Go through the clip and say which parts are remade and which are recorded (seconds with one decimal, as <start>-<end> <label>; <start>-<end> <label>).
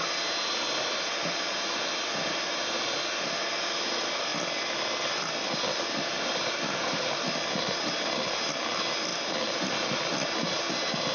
0.0-11.1 recorded